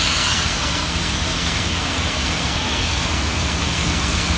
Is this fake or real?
fake